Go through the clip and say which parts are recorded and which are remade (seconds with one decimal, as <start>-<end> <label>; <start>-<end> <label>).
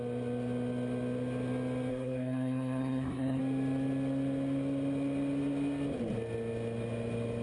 0.0-1.9 recorded; 1.9-3.4 remade; 3.4-7.4 recorded